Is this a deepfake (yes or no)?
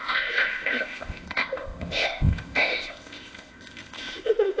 yes